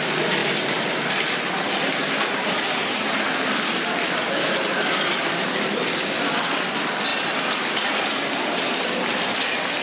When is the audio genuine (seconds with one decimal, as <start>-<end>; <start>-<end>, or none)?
0.0-9.8